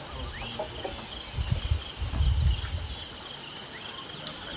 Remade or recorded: recorded